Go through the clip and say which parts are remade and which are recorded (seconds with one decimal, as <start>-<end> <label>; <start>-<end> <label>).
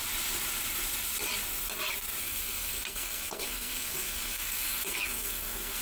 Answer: 0.0-2.2 recorded; 2.2-5.8 remade